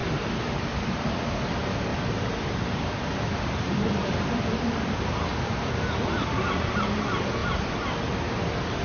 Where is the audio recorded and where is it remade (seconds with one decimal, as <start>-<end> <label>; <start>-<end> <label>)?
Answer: 0.0-1.1 remade; 1.1-1.9 recorded; 1.9-5.7 remade; 5.7-8.8 recorded